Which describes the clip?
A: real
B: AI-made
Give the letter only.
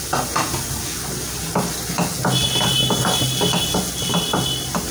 A